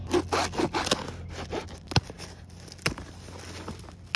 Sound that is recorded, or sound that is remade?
recorded